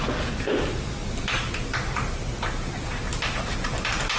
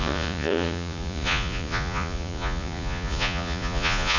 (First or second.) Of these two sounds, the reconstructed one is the second